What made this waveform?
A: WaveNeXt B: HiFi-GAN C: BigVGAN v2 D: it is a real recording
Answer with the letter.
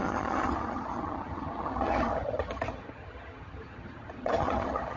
B